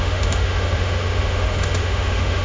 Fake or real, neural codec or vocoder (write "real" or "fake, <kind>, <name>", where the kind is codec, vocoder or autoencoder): fake, autoencoder, DAC-VAE